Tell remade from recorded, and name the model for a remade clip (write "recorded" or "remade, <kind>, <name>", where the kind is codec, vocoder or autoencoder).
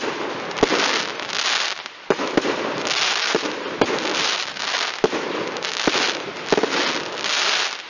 recorded